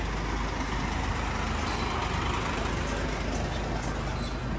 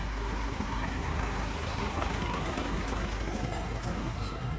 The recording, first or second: first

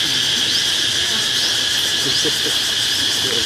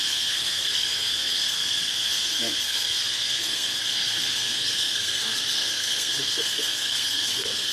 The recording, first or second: first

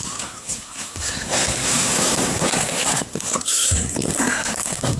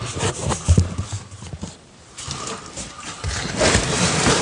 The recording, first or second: second